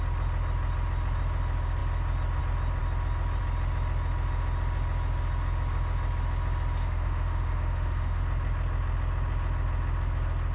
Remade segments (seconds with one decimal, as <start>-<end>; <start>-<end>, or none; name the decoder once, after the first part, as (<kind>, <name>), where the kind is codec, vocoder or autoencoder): 6.8-8.2 (autoencoder, DAC-VAE)